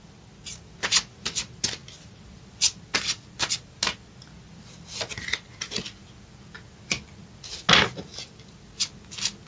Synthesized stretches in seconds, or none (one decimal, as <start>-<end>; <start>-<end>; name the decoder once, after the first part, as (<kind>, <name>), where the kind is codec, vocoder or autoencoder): none